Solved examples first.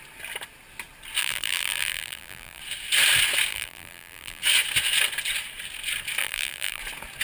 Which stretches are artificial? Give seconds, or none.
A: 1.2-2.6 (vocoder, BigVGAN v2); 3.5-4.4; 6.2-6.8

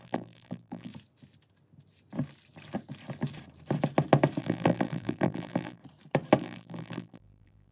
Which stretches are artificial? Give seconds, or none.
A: 0.0-0.9 (vocoder, BigVGAN v2); 4.4-5.8; 6.4-7.7

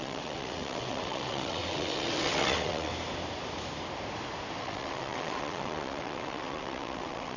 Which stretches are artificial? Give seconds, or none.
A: 0.0-2.9 (vocoder, WaveNeXt); 4.6-7.4

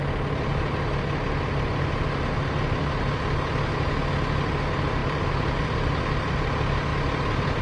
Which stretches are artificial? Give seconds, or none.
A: 5.0-5.7 (vocoder, BigVGAN v2); 6.9-7.6

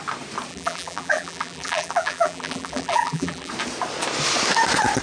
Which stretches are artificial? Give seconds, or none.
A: 0.5-3.5 (vocoder, BigVGAN v2)

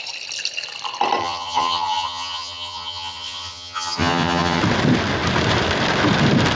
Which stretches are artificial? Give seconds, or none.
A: 1.2-4.6 (vocoder, HiFi-GAN)